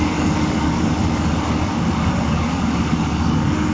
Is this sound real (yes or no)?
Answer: no